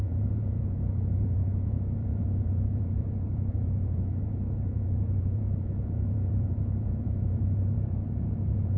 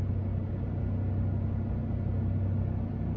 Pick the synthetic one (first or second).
first